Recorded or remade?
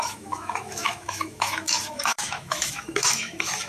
remade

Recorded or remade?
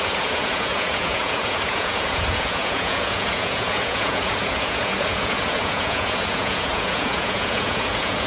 remade